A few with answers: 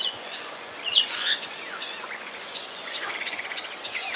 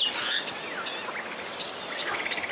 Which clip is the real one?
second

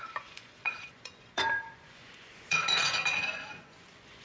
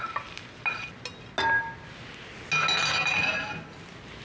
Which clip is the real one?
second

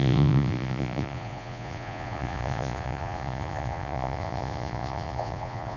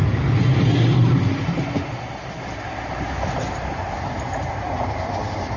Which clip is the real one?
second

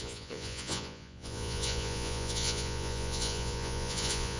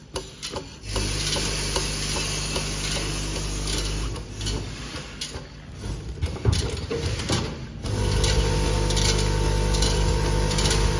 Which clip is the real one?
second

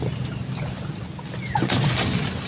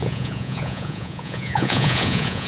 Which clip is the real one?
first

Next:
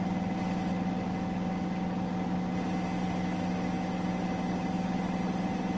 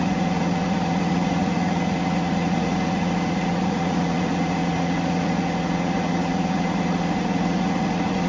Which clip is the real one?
first